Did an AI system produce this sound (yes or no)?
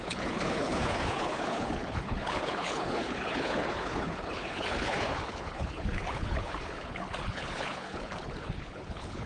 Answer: yes